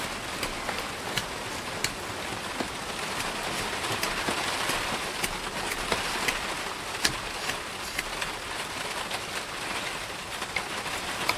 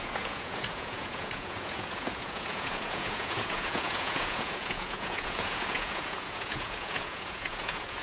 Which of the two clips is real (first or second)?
first